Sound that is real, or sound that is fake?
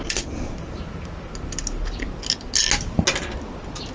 real